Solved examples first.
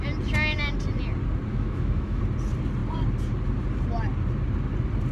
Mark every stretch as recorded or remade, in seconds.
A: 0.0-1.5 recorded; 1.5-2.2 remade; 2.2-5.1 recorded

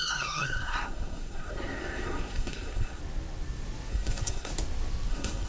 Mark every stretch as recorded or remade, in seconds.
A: 0.0-3.0 remade; 3.0-3.9 recorded; 3.9-4.5 remade; 4.5-5.1 recorded; 5.1-5.5 remade